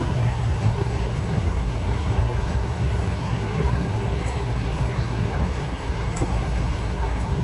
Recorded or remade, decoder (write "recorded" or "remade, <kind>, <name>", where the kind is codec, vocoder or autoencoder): remade, codec, SNAC